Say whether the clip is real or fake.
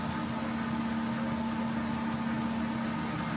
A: real